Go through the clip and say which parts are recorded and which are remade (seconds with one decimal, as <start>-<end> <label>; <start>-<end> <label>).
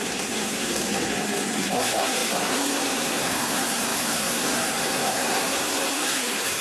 0.0-6.6 remade